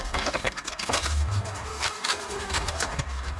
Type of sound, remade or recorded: remade